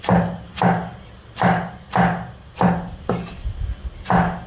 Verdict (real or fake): real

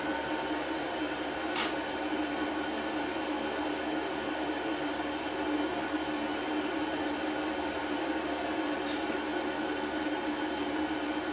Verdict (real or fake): real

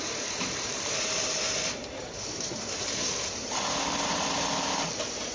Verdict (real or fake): fake